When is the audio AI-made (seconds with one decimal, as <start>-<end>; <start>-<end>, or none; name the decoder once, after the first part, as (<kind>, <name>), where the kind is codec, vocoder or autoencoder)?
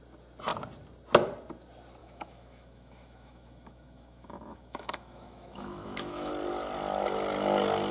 2.0-6.3 (autoencoder, DAC-VAE)